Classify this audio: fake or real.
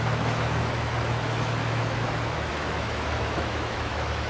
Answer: fake